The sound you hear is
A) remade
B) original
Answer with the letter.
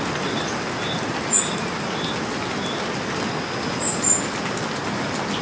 B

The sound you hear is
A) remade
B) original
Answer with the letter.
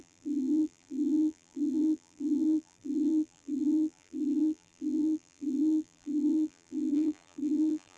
A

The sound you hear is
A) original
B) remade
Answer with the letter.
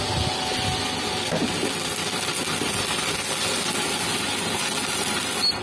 A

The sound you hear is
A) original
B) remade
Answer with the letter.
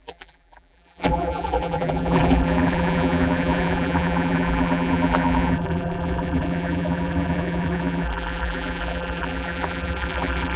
B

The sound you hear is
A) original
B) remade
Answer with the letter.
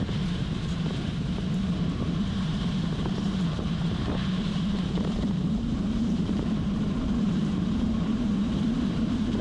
B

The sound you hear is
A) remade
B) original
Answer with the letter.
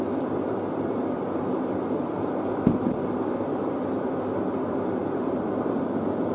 B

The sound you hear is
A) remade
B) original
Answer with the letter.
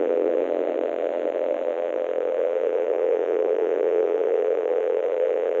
A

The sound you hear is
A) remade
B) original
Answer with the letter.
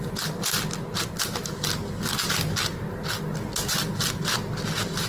B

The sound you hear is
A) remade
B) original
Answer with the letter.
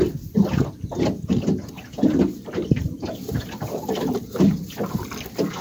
B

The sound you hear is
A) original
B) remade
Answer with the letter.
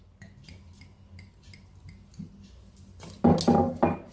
A